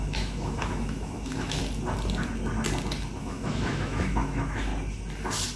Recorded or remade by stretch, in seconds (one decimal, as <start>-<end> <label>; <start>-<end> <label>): 0.0-1.6 remade; 1.6-3.2 recorded; 3.2-4.7 remade; 4.7-5.6 recorded